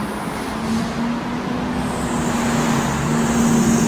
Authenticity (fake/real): real